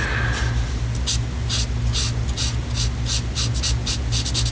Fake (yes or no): no